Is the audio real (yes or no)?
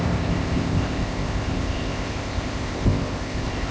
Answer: no